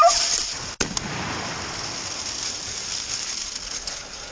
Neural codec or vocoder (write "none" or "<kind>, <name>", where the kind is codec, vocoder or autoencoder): none